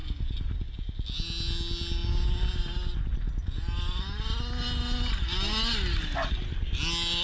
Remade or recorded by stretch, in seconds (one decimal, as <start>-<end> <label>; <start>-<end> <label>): 0.0-7.2 recorded